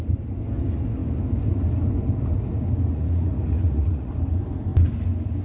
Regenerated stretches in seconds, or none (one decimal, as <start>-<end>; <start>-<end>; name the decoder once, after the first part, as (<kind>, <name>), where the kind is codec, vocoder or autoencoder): 2.9-4.1 (vocoder, Vocos)